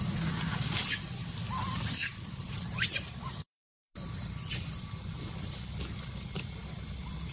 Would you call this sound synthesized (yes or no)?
yes